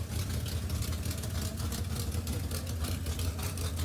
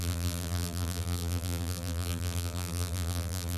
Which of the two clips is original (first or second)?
first